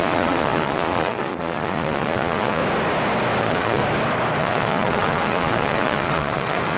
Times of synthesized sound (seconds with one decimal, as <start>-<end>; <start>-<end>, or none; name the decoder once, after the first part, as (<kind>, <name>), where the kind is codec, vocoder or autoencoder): 0.0-2.6 (vocoder, Vocos); 3.4-3.8; 4.4-6.8